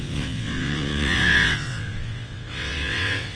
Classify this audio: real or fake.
fake